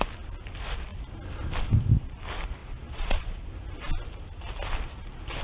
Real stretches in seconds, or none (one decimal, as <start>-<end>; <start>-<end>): 0.0-2.6; 3.4-5.4